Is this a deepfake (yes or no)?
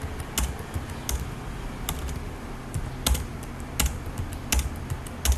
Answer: no